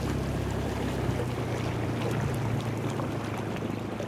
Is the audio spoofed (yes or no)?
no